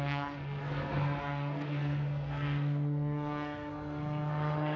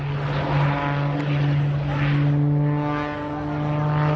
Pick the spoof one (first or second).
first